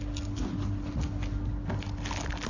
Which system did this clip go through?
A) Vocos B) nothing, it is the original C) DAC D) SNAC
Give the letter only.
B